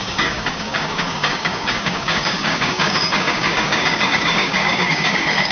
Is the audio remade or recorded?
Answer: remade